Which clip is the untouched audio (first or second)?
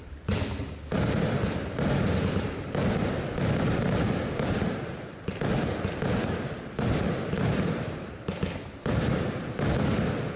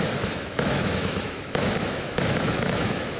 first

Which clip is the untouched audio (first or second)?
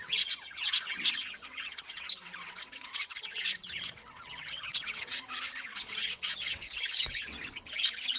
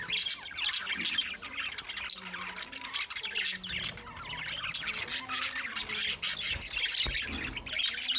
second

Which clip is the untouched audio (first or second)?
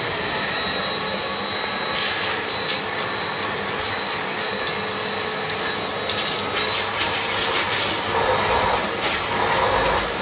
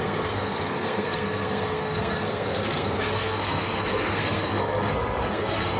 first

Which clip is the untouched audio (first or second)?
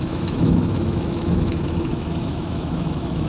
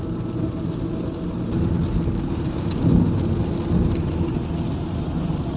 second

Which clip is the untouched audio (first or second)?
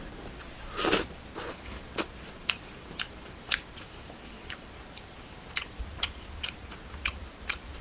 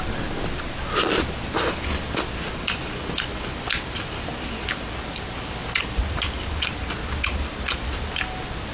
second